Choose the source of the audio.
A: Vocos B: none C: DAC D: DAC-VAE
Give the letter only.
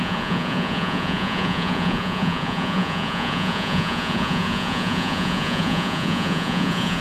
A